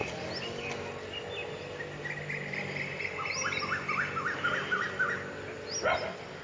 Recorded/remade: recorded